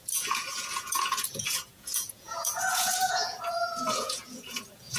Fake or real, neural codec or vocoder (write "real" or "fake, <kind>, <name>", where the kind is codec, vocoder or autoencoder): fake, vocoder, Vocos